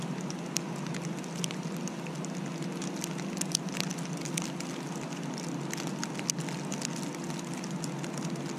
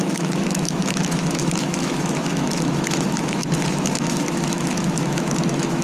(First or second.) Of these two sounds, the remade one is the second